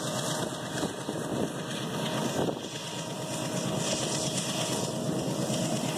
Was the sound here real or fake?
real